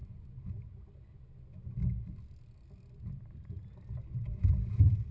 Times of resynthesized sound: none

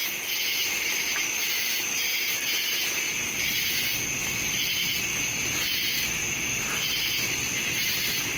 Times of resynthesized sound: none

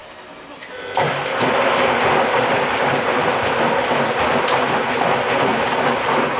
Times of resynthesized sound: none

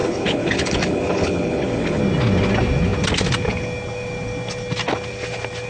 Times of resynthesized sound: 0.0-2.0 (codec, HILCodec)